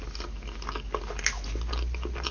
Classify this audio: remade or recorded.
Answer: recorded